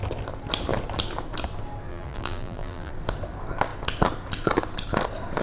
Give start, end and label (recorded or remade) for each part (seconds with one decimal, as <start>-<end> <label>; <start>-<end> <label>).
0.0-1.9 recorded; 1.9-2.9 remade; 2.9-5.4 recorded